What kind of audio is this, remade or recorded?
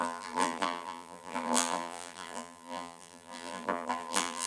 remade